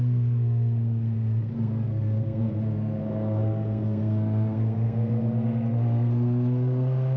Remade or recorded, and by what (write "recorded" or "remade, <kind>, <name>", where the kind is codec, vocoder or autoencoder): remade, codec, SNAC